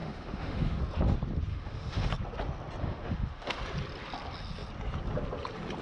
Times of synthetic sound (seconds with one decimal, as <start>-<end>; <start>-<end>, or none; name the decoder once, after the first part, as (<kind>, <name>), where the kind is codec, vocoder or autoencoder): 0.0-0.8 (autoencoder, DAC-VAE); 1.5-2.1; 2.8-3.6